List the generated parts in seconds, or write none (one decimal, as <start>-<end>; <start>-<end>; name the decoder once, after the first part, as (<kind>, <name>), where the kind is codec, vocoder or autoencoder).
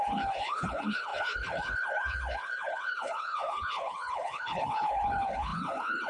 0.0-6.1 (codec, HILCodec)